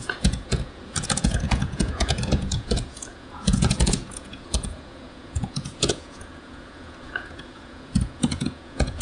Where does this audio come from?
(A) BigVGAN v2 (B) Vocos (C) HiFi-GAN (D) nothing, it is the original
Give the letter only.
B